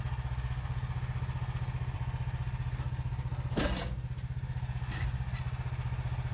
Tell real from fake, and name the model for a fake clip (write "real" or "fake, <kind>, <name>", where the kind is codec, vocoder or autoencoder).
real